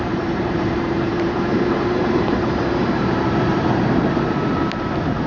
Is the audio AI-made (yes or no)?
yes